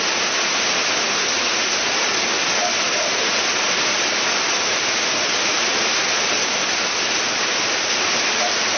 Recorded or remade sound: recorded